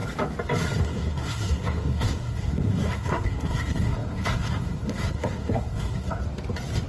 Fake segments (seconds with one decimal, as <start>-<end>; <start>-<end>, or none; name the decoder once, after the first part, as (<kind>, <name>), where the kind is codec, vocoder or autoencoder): 0.8-6.2 (codec, SNAC)